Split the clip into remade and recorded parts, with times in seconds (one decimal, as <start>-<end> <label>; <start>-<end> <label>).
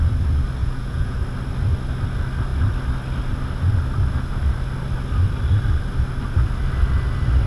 0.0-0.6 recorded; 0.6-1.2 remade; 1.2-7.5 recorded